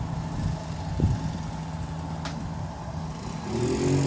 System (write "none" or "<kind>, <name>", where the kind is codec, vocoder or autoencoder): none